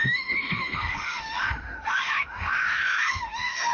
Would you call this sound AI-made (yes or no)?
yes